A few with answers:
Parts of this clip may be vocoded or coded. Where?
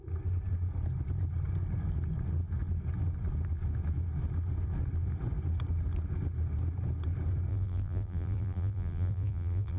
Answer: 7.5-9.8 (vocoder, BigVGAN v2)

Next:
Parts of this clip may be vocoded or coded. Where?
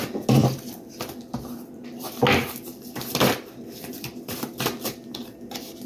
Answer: 0.4-2.2 (vocoder, BigVGAN v2); 2.7-5.2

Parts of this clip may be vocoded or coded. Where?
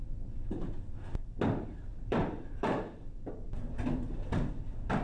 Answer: 1.9-4.5 (vocoder, BigVGAN v2)